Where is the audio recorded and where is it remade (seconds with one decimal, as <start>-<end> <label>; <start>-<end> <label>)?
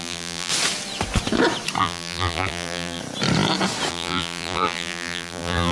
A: 0.0-0.5 remade; 0.5-1.8 recorded; 1.8-3.0 remade; 3.0-3.9 recorded; 3.9-5.7 remade